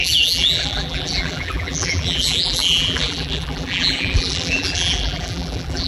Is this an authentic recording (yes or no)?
no